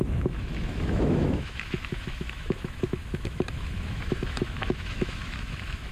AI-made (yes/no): yes